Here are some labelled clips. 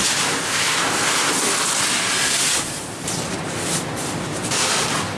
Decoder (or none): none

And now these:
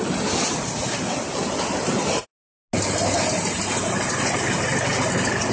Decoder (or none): none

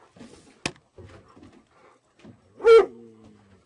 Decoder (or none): none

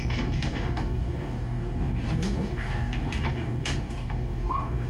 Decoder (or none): codec, DAC